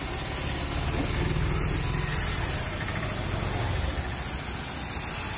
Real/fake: real